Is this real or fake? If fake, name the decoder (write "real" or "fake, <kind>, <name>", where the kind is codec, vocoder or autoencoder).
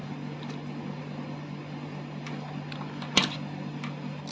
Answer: real